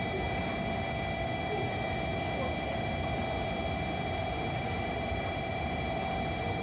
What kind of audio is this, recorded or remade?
recorded